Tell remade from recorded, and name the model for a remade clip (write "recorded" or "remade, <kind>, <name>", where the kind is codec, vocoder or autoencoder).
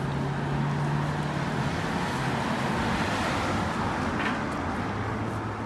recorded